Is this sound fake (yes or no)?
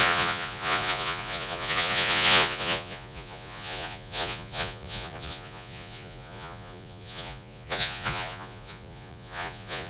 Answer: yes